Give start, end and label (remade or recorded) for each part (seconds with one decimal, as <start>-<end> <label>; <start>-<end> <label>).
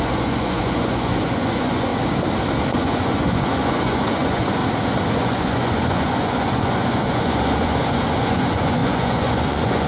0.0-1.9 remade; 1.9-2.7 recorded; 2.7-4.6 remade; 4.6-5.1 recorded; 5.1-9.9 remade